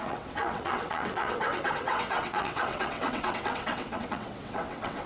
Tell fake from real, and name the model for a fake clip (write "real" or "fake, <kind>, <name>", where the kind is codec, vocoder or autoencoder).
fake, vocoder, WaveNeXt